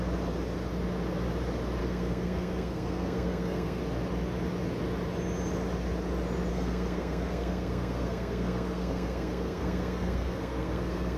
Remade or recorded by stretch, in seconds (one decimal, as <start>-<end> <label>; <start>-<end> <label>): 0.0-1.8 recorded; 1.8-3.8 remade; 3.8-6.5 recorded; 6.5-11.2 remade